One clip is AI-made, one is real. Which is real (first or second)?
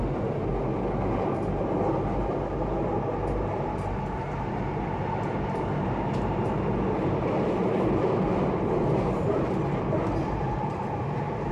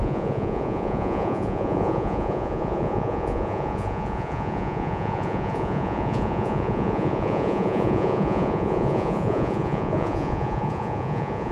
first